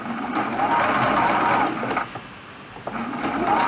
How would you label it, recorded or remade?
recorded